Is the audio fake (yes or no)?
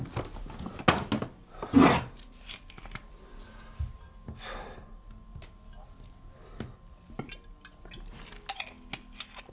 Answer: no